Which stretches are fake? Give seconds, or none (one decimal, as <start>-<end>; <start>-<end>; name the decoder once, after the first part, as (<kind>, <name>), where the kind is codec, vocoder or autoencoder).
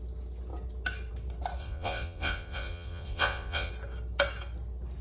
1.6-3.7 (vocoder, Vocos)